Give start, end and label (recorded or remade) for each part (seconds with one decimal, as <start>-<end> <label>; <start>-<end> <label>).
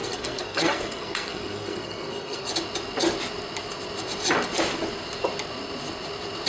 0.0-2.5 remade; 2.5-6.5 recorded